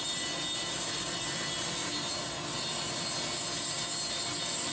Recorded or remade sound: recorded